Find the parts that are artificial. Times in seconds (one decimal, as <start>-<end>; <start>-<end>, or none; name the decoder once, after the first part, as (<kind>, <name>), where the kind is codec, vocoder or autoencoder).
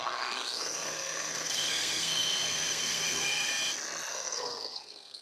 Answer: 0.0-3.5 (codec, SNAC); 4.1-5.2